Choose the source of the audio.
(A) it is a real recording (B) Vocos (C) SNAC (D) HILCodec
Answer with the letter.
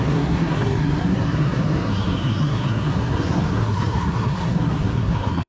C